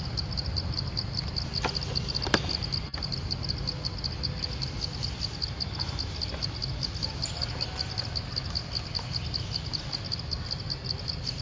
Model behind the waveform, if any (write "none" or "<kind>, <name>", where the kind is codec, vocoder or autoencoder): none